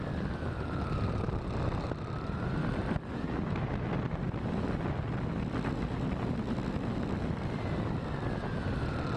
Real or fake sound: real